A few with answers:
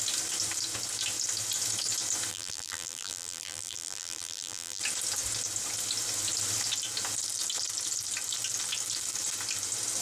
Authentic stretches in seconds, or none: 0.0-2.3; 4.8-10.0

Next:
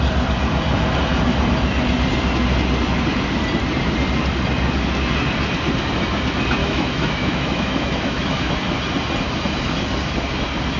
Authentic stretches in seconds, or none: 0.0-6.6; 8.5-10.8

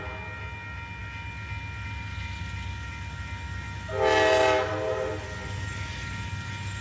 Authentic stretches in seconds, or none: 0.0-6.8

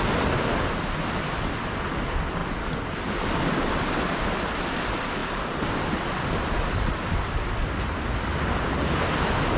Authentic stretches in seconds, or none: 0.0-9.6